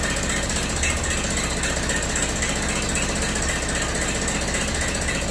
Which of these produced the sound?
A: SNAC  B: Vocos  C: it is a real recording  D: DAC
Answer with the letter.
C